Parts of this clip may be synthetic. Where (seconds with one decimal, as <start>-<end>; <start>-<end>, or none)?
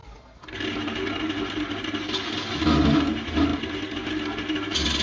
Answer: none